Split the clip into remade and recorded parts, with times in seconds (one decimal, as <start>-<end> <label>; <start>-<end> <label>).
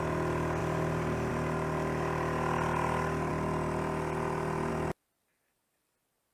0.0-0.6 recorded; 0.6-1.3 remade; 1.3-6.3 recorded